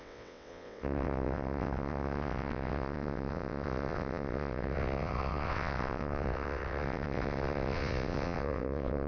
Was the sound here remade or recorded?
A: remade